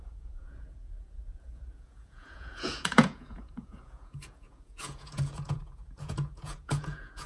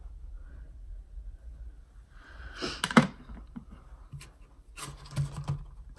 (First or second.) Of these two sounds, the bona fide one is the second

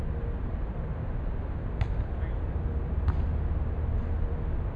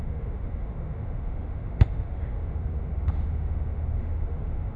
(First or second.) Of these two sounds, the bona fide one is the first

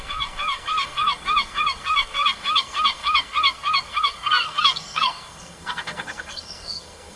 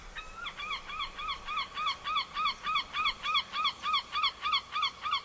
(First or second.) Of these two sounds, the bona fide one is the second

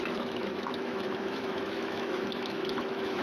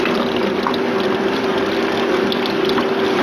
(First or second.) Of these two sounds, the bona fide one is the second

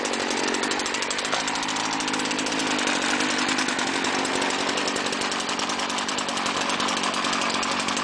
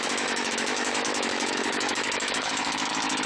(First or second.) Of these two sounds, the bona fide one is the first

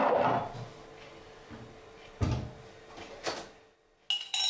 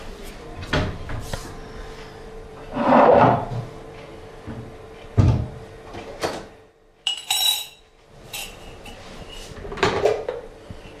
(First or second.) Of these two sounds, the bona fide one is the first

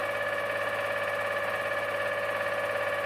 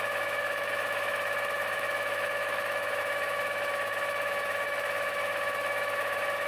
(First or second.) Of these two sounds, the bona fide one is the first